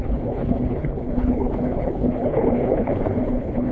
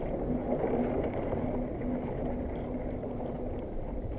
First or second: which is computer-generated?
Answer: first